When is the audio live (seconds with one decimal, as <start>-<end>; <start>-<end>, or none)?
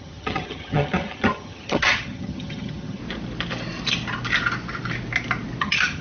3.0-5.6